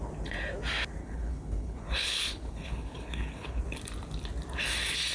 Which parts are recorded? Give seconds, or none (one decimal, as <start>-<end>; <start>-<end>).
0.0-1.0; 3.6-5.1